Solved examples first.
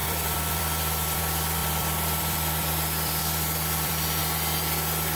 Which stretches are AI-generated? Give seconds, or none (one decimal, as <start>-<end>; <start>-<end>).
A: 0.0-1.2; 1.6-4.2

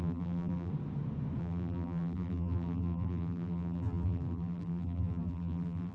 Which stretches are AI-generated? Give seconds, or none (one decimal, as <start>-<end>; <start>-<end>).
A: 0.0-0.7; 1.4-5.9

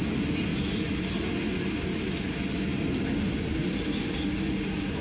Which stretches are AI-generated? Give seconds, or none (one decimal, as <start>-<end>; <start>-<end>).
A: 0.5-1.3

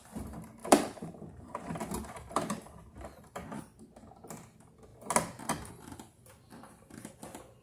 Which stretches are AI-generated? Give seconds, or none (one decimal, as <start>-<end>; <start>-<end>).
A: 0.6-3.6

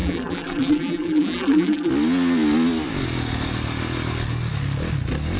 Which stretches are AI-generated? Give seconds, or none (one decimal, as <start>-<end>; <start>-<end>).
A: 0.0-1.9

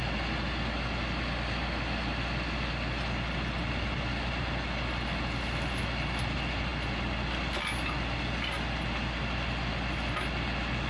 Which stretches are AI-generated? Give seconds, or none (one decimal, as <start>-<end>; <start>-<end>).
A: none

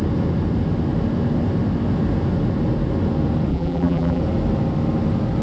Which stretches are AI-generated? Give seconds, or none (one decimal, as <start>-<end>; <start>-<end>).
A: 3.5-4.2

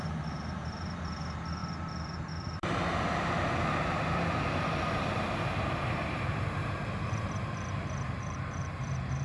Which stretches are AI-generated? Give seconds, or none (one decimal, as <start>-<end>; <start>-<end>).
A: 0.0-9.2